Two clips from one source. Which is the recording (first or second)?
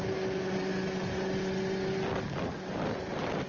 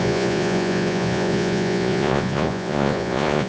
first